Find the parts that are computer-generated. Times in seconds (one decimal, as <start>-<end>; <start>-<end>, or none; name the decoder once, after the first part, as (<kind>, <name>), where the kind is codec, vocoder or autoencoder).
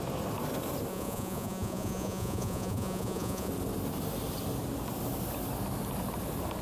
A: 0.9-3.5 (vocoder, Vocos)